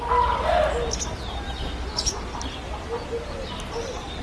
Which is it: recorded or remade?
recorded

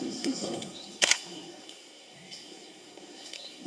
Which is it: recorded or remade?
remade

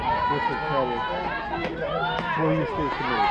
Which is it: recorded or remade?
recorded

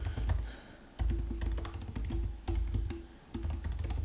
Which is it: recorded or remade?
recorded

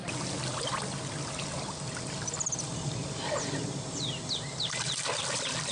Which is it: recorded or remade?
recorded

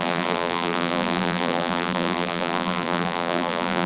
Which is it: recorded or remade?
remade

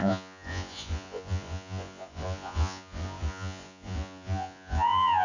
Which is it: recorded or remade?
remade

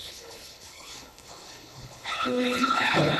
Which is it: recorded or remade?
remade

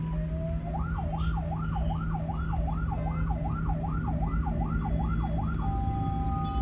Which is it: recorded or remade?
recorded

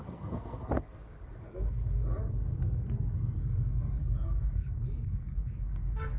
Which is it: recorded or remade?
remade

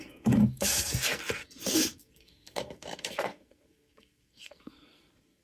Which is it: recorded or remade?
remade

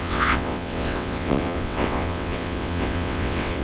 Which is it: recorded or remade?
remade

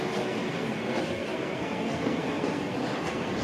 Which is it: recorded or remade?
remade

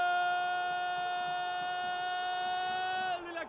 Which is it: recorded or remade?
recorded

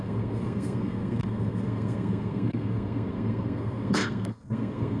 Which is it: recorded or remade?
remade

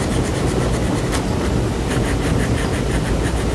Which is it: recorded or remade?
recorded